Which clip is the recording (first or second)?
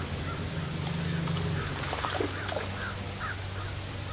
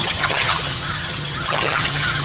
first